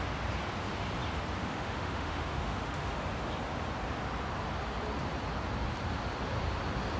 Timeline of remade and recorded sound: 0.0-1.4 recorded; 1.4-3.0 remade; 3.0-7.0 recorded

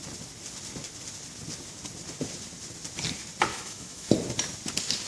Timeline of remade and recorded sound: 0.0-3.5 recorded; 3.5-4.1 remade; 4.1-5.1 recorded

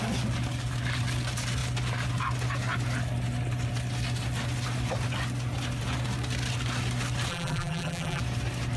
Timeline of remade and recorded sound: 0.0-7.3 recorded; 7.3-8.2 remade; 8.2-8.8 recorded

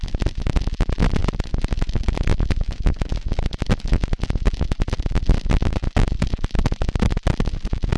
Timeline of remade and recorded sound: 0.0-8.0 recorded

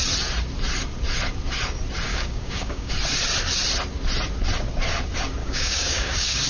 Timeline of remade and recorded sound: 0.0-2.1 recorded; 2.1-2.9 remade; 2.9-5.4 recorded; 5.4-6.5 remade